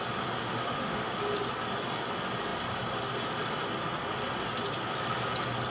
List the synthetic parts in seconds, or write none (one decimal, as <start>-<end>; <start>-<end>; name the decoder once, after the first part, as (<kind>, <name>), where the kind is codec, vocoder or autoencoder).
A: 0.4-1.1 (autoencoder, DAC-VAE)